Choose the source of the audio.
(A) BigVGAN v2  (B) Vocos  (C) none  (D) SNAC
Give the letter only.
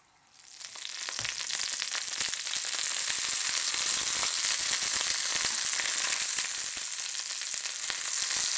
C